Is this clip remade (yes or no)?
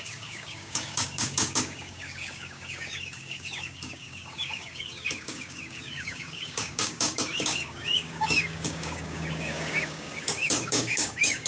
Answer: yes